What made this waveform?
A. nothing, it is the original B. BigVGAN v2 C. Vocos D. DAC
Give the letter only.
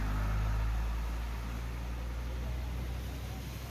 A